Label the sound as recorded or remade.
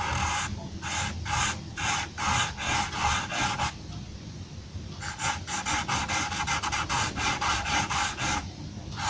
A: recorded